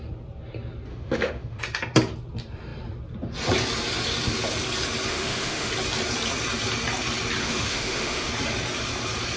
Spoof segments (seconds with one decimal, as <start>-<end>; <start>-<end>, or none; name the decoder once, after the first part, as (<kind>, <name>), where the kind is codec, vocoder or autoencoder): 0.9-1.6 (autoencoder, DAC-VAE); 5.1-5.7; 7.4-8.3